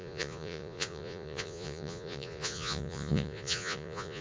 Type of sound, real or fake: fake